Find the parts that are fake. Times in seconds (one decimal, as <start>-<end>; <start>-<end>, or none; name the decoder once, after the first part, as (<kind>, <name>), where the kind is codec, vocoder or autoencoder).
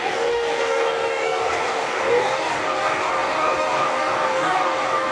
0.0-5.1 (codec, DAC)